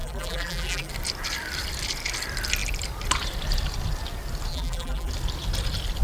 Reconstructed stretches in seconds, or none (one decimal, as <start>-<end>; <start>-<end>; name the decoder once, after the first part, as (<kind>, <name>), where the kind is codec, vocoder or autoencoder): 0.0-0.9 (vocoder, BigVGAN v2); 4.5-5.1